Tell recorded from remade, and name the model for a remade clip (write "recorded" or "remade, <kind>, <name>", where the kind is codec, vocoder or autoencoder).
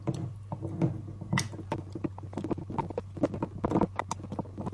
recorded